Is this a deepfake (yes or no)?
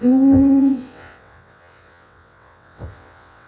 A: yes